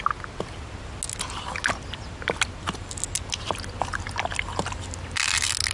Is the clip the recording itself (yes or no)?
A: yes